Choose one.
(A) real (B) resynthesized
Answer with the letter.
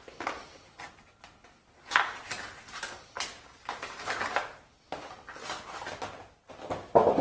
A